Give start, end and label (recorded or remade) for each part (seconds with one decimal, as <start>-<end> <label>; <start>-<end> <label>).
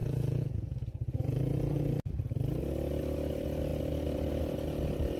0.0-2.1 remade; 2.1-5.2 recorded